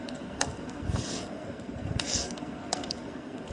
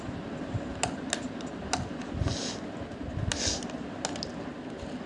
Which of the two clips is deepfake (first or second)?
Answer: first